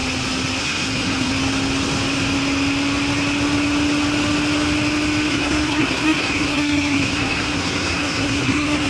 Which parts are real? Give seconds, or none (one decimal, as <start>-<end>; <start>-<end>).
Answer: 0.0-0.6; 1.3-5.3